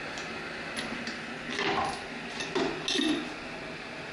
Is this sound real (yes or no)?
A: yes